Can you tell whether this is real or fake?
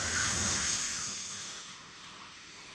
fake